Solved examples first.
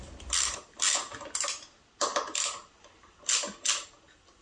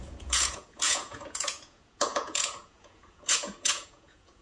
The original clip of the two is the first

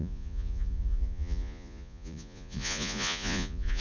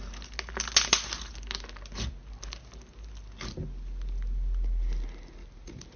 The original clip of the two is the second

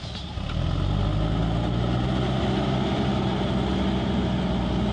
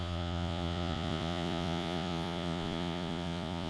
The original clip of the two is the first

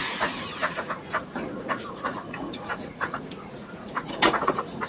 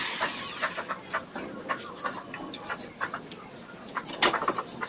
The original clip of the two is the second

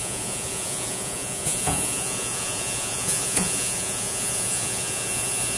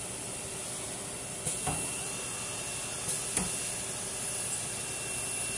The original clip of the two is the second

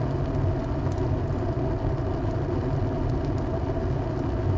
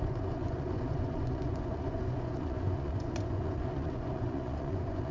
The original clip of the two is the first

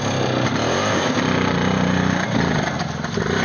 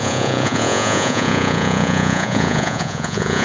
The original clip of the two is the first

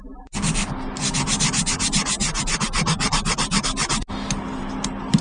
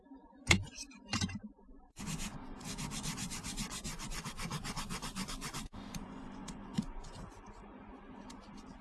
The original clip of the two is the first